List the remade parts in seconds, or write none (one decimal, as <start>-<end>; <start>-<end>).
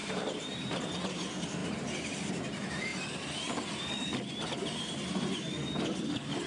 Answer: 0.0-0.8; 1.6-2.3